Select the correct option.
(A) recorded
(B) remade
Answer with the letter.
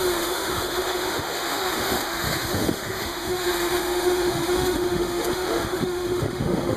B